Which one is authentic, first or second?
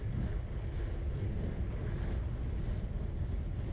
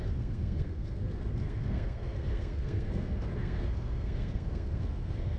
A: first